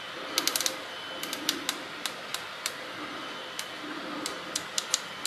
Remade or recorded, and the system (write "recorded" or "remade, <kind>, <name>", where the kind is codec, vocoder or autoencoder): recorded